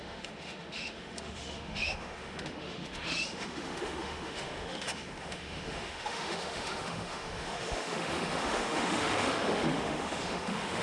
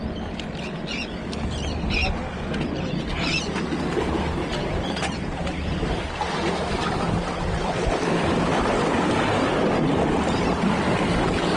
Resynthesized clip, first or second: first